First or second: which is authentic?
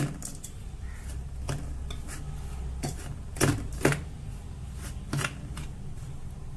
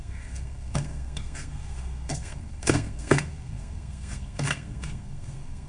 first